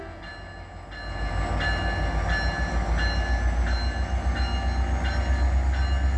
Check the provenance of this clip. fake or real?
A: real